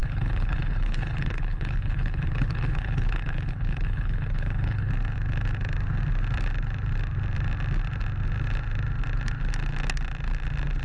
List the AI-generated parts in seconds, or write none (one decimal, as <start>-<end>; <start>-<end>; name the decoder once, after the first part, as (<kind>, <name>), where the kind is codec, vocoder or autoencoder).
0.0-4.9 (codec, HILCodec)